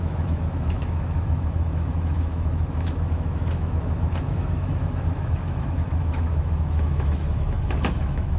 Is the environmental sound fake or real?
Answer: fake